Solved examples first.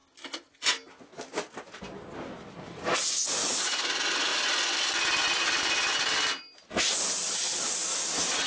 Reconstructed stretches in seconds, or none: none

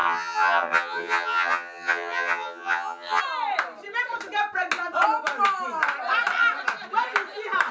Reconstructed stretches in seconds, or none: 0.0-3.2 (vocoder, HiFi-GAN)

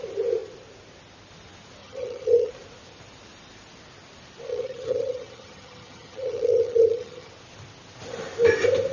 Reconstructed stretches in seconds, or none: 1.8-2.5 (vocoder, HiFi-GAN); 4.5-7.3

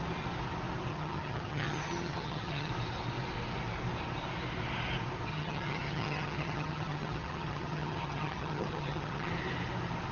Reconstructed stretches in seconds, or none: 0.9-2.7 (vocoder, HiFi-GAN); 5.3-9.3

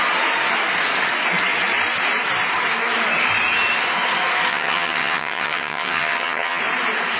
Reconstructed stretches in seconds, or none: 4.5-6.6 (vocoder, HiFi-GAN)

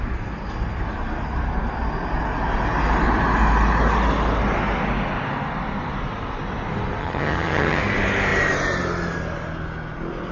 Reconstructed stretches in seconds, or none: 7.0-7.8 (vocoder, HiFi-GAN)

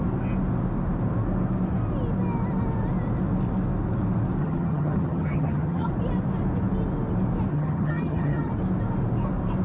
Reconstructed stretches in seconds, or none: 4.4-5.9 (vocoder, HiFi-GAN); 7.5-8.5